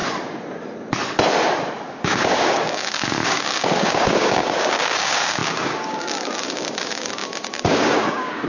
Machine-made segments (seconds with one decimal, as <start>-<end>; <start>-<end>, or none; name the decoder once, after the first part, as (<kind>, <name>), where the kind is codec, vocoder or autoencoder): 1.9-8.5 (codec, DAC)